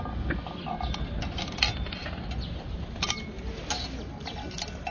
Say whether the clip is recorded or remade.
recorded